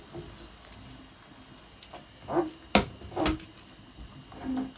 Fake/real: real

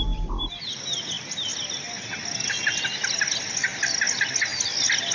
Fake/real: real